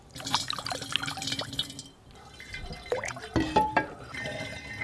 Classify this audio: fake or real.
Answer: real